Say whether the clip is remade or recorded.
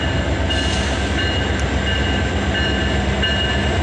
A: recorded